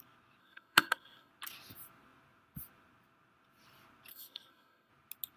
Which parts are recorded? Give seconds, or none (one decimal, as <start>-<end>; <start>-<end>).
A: 0.0-0.4; 1.3-4.1; 4.9-5.4